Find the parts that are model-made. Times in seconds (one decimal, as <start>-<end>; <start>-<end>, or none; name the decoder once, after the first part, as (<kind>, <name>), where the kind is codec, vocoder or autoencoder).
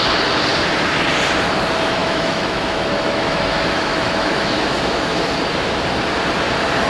2.0-5.2 (autoencoder, DAC-VAE)